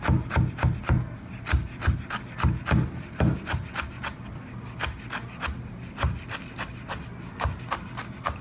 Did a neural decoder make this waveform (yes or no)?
no